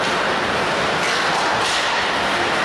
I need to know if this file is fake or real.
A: real